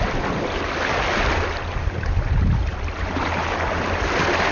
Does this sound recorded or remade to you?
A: recorded